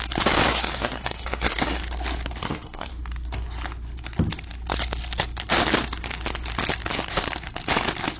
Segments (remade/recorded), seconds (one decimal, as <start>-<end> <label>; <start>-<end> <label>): 0.0-0.5 recorded; 0.5-1.8 remade; 1.8-2.4 recorded; 2.4-2.9 remade; 2.9-8.2 recorded